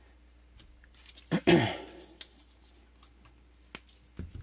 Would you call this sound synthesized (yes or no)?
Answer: no